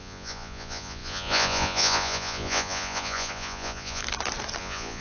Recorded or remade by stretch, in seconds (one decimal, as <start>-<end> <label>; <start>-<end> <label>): 0.0-4.0 remade; 4.0-4.6 recorded; 4.6-5.0 remade